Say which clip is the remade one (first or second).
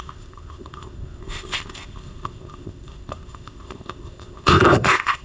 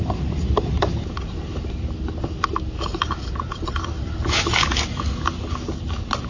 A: first